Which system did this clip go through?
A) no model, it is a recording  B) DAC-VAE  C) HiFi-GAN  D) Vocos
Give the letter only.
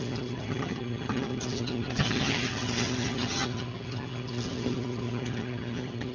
C